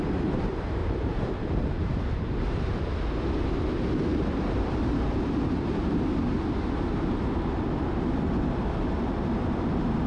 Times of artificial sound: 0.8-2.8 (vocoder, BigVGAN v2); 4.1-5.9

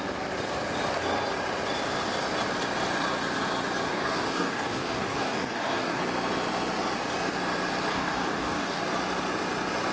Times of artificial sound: 3.9-6.0 (codec, DAC); 7.9-8.8

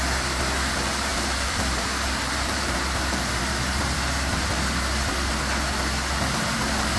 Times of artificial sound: 0.0-5.3 (vocoder, BigVGAN v2); 6.1-7.0

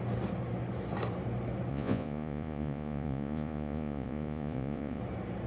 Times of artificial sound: 1.7-5.0 (vocoder, Vocos)

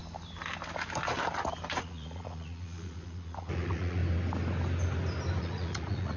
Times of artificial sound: 1.8-4.0 (vocoder, Vocos); 5.4-6.2